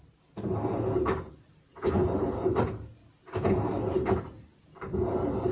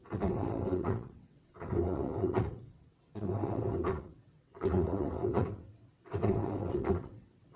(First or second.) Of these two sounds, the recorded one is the first